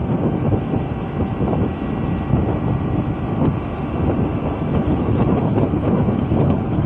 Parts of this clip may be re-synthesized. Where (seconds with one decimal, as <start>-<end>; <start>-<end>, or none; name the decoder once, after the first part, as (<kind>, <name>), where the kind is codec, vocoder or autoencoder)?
4.7-6.9 (codec, HILCodec)